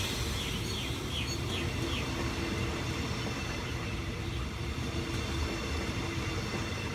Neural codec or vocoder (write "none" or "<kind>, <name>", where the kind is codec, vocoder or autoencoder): none